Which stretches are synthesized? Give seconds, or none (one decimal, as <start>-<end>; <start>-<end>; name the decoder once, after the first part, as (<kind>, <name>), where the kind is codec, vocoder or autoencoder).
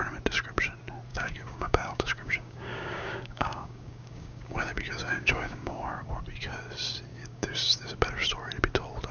1.1-6.1 (codec, DAC); 7.1-7.9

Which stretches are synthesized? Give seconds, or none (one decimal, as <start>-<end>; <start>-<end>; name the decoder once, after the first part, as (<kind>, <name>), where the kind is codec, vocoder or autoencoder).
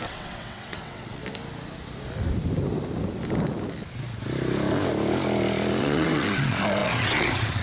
0.0-1.2 (vocoder, WaveNeXt); 5.8-7.6